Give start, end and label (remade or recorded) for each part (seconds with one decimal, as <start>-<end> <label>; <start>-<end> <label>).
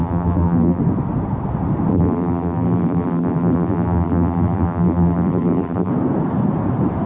0.0-0.8 remade; 0.8-1.9 recorded; 1.9-5.9 remade; 5.9-7.1 recorded